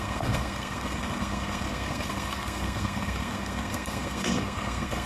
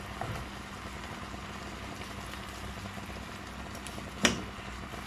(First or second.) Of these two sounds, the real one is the second